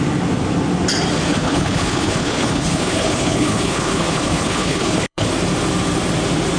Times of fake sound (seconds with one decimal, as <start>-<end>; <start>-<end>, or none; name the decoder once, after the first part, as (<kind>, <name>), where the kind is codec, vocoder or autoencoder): 1.3-5.3 (codec, HILCodec)